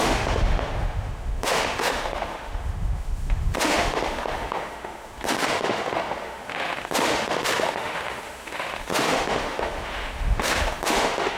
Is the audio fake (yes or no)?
yes